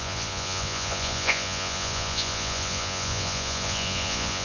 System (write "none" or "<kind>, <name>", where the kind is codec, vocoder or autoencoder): vocoder, Vocos